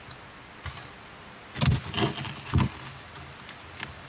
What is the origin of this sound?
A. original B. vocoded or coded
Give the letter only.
A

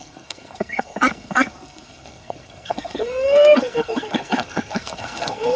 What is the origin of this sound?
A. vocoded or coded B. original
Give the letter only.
A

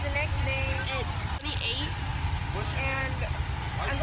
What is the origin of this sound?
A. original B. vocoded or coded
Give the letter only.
A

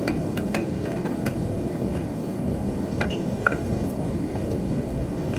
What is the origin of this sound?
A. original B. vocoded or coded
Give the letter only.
B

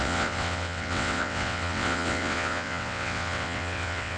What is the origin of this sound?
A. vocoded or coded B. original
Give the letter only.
A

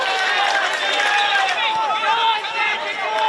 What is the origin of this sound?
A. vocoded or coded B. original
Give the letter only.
B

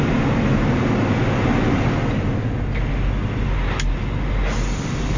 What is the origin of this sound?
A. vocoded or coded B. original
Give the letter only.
B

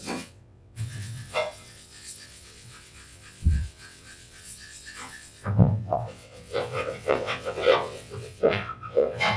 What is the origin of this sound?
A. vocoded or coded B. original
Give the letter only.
A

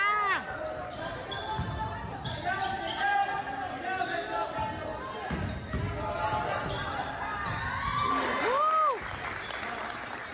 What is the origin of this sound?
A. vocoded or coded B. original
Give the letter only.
B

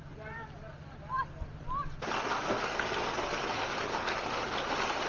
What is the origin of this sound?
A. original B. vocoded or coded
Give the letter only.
A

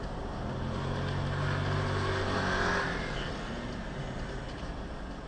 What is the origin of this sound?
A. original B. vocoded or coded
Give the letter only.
A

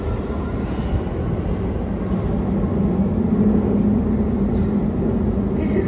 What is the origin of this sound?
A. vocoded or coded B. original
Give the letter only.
B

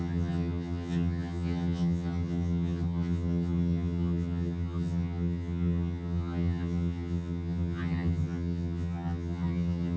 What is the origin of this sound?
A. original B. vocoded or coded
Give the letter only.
B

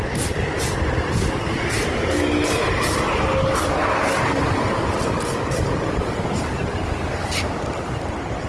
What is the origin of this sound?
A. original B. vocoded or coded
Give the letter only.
A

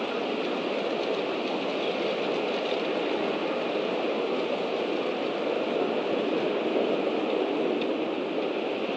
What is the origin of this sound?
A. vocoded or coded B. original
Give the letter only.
B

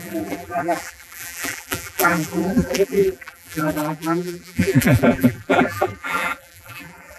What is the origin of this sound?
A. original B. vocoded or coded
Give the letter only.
B